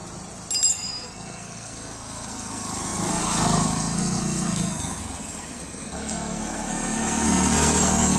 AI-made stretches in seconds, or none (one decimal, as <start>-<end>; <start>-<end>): 0.7-8.2